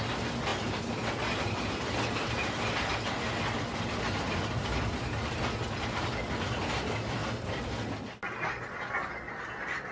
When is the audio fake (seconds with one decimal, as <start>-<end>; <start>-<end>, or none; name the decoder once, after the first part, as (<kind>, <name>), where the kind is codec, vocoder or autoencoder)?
none